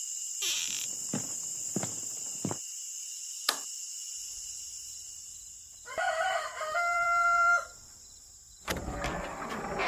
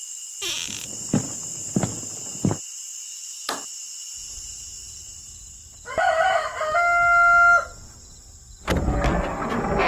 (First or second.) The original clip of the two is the second